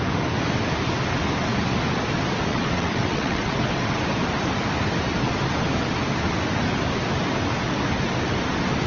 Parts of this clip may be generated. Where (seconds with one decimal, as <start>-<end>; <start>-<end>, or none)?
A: 2.5-4.0

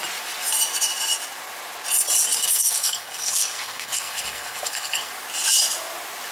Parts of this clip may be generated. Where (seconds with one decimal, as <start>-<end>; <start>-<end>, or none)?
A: 2.4-5.1

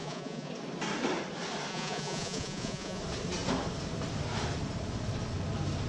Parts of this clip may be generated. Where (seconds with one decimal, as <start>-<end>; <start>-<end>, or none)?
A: 0.0-0.5; 1.7-3.0